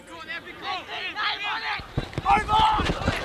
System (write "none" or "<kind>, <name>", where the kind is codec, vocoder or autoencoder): none